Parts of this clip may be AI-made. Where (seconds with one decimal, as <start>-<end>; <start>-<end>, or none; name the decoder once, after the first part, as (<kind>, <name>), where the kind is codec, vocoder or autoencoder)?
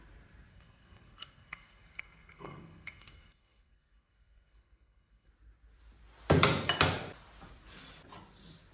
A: 0.5-5.3 (codec, SNAC)